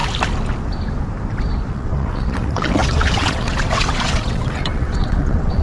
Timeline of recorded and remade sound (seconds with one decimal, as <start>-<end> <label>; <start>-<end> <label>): 0.0-1.7 recorded; 1.7-5.6 remade